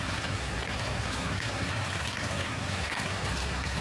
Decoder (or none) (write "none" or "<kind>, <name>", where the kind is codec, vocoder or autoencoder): codec, SNAC